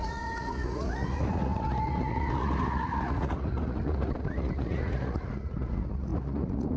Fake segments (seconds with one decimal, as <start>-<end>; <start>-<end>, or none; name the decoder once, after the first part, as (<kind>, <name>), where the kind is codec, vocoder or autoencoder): 0.0-6.8 (vocoder, Vocos)